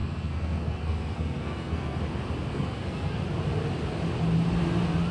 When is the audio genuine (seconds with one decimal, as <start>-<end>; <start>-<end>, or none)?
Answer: 2.0-2.5; 3.2-5.1